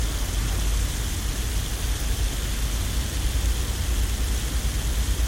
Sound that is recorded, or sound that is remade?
recorded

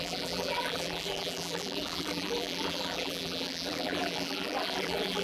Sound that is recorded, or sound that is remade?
remade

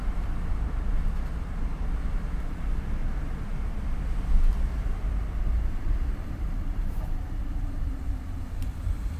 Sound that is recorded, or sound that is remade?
remade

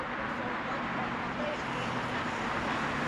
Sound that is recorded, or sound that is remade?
recorded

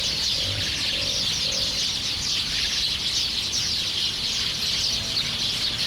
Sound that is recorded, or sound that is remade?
recorded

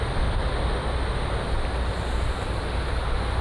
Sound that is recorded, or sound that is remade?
recorded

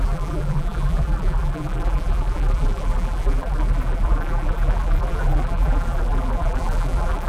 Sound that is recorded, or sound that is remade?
remade